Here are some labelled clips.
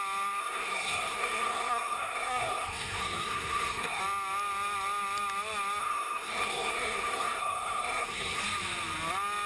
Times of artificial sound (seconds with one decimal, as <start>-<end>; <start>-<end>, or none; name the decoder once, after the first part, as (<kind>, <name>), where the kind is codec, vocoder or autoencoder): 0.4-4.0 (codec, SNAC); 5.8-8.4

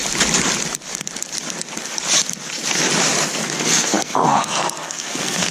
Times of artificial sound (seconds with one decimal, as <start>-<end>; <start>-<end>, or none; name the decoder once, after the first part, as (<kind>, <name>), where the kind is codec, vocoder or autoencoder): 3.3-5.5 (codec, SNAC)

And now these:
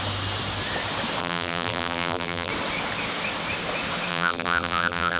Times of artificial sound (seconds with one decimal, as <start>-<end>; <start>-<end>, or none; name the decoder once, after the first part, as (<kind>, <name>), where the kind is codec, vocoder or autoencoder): 1.2-2.5 (vocoder, BigVGAN v2); 4.1-5.2

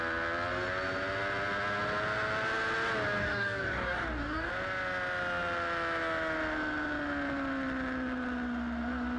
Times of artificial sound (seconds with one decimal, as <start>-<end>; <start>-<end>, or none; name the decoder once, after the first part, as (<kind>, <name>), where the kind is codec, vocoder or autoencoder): 3.2-4.5 (codec, DAC)

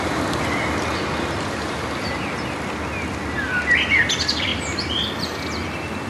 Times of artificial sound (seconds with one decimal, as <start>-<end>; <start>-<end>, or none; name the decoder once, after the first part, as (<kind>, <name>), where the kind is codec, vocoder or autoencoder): none

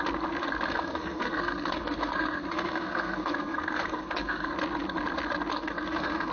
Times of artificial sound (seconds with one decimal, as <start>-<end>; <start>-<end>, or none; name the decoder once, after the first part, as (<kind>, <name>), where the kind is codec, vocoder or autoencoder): 0.7-4.5 (codec, SNAC); 5.5-6.3

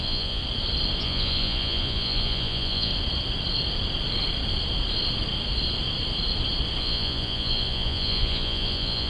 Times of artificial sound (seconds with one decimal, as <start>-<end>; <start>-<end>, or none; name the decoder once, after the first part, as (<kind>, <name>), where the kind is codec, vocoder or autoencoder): 0.0-0.4 (vocoder, Vocos); 1.0-2.9; 6.8-9.1